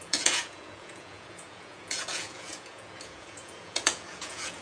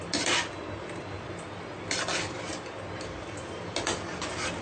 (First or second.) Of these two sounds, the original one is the second